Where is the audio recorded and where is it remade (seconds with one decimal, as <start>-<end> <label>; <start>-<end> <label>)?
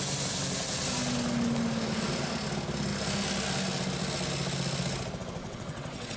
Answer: 0.0-5.4 recorded; 5.4-6.2 remade